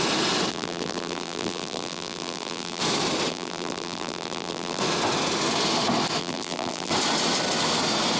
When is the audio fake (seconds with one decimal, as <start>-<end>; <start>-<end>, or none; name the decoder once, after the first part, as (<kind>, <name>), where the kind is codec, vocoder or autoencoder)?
0.5-2.8 (vocoder, BigVGAN v2); 3.3-4.8; 6.2-6.9